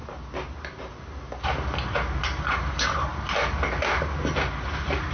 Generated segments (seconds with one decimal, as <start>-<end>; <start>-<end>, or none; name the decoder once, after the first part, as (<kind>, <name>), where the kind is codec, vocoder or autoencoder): none